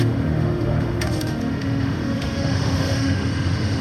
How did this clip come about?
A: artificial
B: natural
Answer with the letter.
A